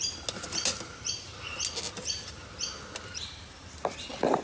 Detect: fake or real real